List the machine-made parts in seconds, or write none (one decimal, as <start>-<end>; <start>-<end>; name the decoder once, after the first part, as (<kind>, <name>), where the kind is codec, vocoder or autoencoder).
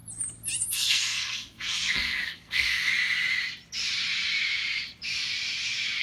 0.6-2.9 (codec, SNAC)